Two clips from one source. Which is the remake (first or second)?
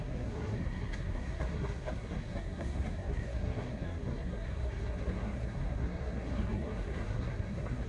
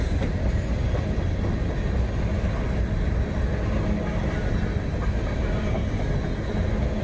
first